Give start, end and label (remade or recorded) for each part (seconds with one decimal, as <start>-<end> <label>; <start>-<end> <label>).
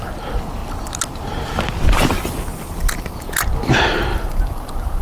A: 0.0-4.1 recorded; 4.1-5.0 remade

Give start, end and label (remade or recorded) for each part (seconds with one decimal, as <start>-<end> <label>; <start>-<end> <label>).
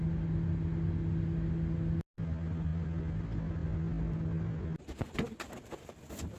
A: 0.0-6.4 recorded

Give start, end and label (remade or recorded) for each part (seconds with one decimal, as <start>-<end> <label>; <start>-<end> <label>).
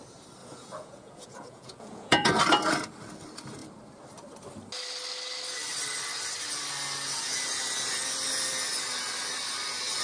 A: 0.0-0.4 recorded; 0.4-2.4 remade; 2.4-10.0 recorded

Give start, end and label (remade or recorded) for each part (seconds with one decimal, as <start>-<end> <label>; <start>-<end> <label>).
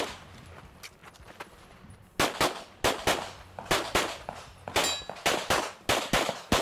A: 0.0-6.6 recorded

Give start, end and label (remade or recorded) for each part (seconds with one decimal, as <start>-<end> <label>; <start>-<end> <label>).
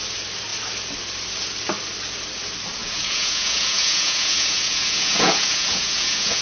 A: 0.0-2.8 recorded; 2.8-6.4 remade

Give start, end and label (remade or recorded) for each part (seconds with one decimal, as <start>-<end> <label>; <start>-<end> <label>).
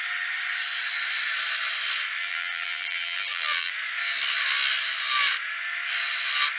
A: 0.0-2.2 recorded; 2.2-3.7 remade; 3.7-6.6 recorded